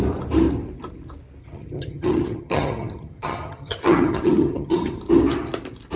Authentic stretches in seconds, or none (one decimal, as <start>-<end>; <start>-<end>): 0.0-1.4; 5.0-6.0